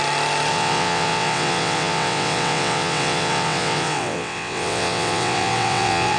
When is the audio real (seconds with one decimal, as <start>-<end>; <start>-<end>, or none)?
0.0-0.5